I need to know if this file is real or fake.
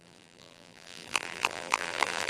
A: fake